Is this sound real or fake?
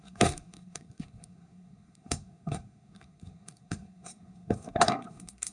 fake